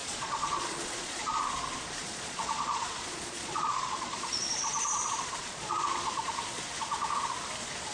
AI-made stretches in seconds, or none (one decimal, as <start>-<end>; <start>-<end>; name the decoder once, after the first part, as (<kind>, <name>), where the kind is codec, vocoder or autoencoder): 0.0-1.4 (vocoder, Vocos); 2.0-6.7